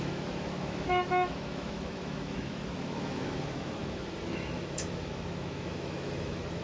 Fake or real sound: fake